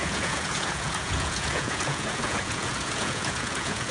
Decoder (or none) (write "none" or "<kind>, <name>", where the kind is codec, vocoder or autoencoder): vocoder, Vocos